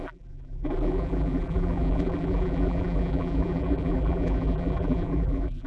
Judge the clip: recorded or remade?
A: remade